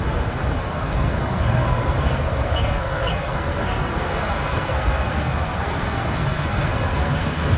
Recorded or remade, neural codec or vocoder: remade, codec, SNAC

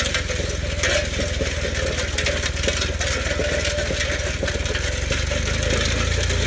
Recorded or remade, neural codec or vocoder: recorded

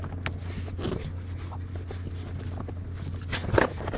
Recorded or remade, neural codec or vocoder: recorded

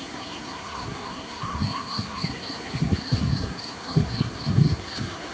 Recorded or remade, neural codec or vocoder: remade, codec, SNAC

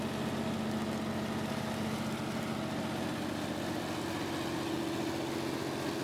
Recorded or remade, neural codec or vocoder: recorded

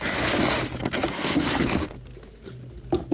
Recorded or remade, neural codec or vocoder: recorded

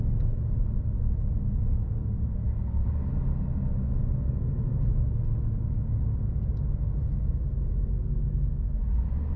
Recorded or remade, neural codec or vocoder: recorded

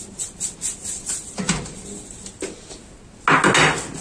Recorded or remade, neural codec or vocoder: recorded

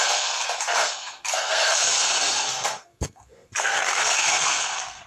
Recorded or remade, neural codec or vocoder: remade, codec, SNAC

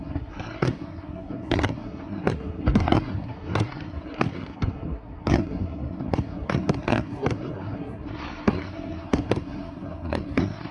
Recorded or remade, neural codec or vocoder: remade, codec, SNAC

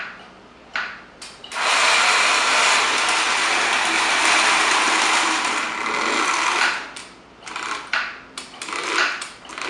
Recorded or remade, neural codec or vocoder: recorded